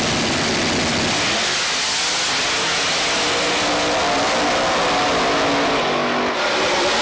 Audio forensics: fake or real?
real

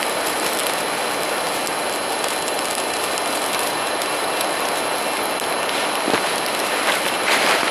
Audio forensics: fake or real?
real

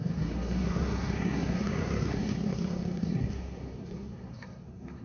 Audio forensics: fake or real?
fake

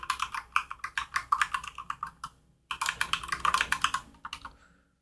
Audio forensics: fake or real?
real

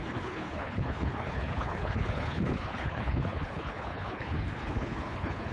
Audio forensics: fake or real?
fake